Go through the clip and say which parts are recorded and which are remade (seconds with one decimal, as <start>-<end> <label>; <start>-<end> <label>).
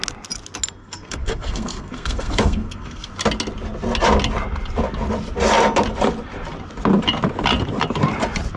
0.0-0.8 recorded; 0.8-3.1 remade; 3.1-8.6 recorded